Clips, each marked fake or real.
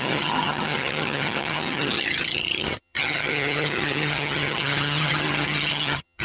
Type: fake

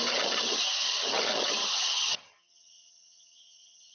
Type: fake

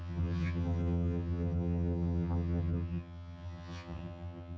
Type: fake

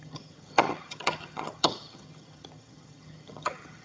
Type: fake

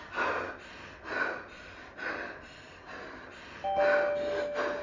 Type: real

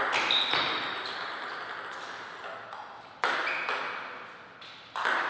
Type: real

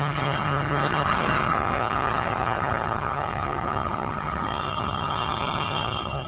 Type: fake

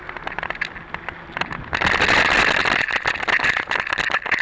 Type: real